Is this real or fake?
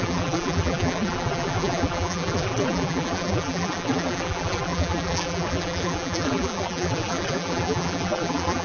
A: fake